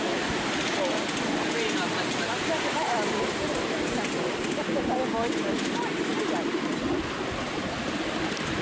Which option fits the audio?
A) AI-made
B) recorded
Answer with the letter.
B